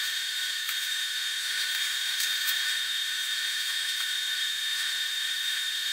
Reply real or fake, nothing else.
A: fake